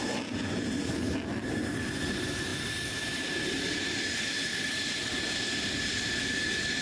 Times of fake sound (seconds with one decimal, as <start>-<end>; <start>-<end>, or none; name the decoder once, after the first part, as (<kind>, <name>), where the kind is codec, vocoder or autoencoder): none